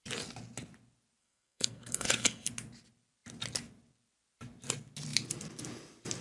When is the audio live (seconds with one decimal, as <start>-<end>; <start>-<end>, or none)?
0.0-1.2; 2.5-6.2

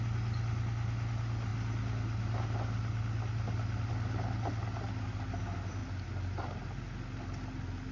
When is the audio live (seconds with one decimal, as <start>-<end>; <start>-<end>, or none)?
0.0-7.9

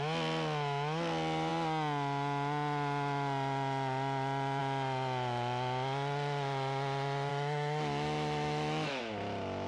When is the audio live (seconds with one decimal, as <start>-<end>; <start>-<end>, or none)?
0.0-7.3; 9.0-9.7

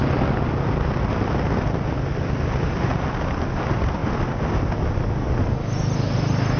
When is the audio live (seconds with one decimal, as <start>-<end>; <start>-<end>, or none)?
0.0-6.6

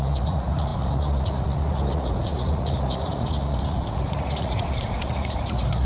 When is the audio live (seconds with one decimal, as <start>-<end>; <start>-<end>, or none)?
none